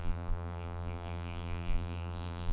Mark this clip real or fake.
fake